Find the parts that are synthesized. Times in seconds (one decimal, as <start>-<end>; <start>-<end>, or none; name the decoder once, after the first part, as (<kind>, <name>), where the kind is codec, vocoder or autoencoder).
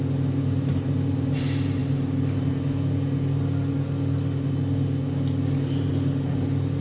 none